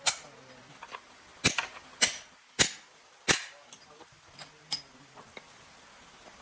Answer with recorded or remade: recorded